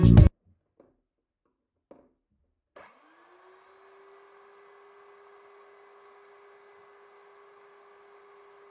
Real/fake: real